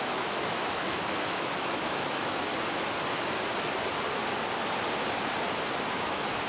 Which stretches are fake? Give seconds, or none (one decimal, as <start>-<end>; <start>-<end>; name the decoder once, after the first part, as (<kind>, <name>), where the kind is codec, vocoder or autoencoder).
0.0-2.5 (autoencoder, DAC-VAE); 6.0-6.5